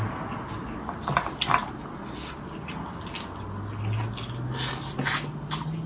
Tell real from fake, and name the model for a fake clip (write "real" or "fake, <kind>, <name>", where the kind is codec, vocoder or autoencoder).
real